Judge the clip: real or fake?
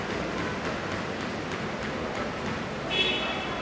real